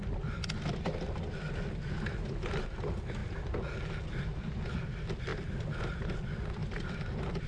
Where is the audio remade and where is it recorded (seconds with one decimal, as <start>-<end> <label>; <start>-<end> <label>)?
0.0-7.5 recorded